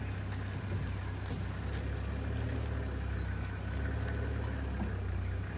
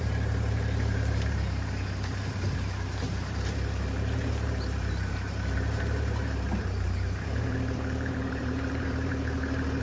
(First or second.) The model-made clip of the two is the second